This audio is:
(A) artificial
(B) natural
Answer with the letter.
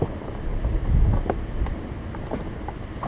B